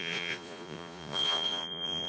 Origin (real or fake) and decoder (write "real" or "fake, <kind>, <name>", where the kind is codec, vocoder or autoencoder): fake, vocoder, Vocos